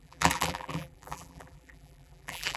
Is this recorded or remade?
remade